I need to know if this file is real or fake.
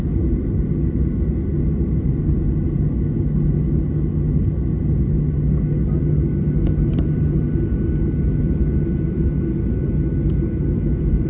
real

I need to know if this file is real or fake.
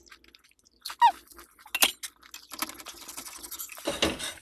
real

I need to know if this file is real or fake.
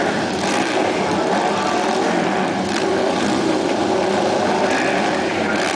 real